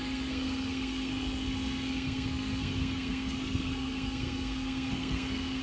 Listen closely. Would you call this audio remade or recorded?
remade